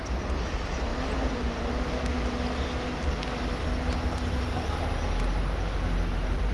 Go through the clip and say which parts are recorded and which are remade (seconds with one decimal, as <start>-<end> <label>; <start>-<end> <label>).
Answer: 0.0-6.5 recorded